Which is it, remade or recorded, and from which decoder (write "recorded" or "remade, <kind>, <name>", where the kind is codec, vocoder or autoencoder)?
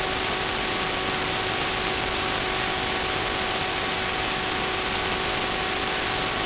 recorded